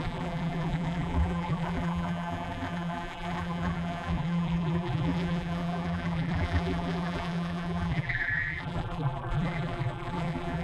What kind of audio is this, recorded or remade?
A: remade